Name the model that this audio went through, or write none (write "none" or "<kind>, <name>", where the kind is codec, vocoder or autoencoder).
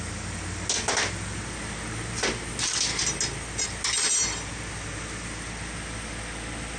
none